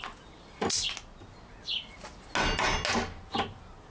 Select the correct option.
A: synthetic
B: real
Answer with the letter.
B